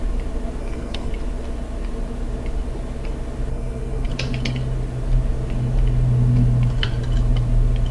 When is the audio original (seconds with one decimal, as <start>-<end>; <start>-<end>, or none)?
0.0-0.6; 1.1-3.5; 4.1-7.9